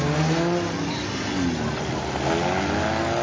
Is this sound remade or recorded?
recorded